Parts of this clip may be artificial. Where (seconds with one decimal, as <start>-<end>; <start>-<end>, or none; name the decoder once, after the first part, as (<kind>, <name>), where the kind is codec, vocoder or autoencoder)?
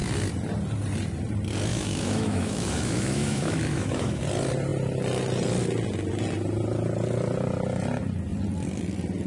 1.7-4.2 (autoencoder, DAC-VAE)